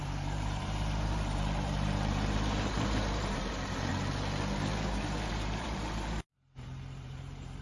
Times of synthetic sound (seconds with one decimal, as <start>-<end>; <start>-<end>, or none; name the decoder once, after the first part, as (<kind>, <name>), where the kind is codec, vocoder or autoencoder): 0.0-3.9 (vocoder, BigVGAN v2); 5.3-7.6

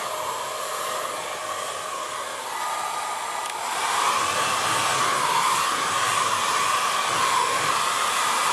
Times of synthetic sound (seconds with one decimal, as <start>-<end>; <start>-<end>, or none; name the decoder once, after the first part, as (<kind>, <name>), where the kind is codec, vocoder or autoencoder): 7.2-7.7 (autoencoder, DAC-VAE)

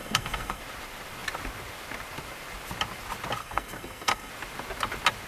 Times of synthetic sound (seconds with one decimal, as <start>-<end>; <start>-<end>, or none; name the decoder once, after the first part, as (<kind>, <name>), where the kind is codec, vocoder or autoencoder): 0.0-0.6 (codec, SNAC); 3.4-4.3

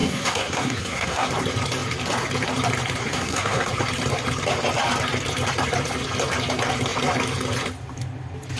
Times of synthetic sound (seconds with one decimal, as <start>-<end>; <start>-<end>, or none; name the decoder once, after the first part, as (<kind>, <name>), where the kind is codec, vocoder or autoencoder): 0.0-1.3 (codec, SNAC); 3.0-3.7

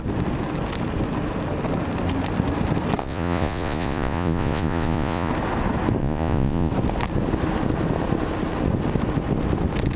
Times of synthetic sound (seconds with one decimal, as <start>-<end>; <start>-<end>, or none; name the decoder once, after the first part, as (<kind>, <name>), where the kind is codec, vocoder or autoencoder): 3.0-5.3 (vocoder, Vocos); 6.0-6.7

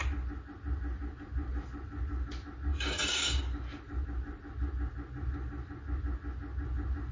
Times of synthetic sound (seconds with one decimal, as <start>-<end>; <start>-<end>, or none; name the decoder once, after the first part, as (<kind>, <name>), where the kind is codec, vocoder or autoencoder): 2.7-3.4 (codec, DAC)

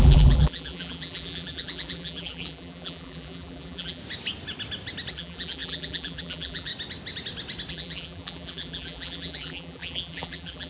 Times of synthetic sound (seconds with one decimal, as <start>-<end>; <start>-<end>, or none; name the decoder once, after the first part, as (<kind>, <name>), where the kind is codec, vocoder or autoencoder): 0.0-4.0 (vocoder, BigVGAN v2); 5.1-6.7; 7.7-10.7

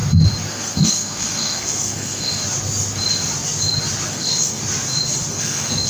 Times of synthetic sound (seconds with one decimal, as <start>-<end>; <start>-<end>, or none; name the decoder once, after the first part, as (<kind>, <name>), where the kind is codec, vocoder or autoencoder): 0.5-2.4 (codec, SNAC); 4.1-4.6; 5.3-5.9